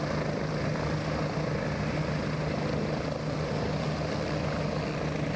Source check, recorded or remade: recorded